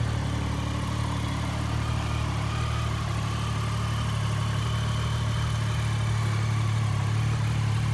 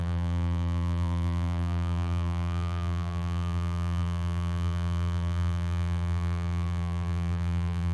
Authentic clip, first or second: first